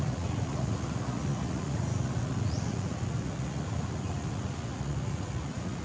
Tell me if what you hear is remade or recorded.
remade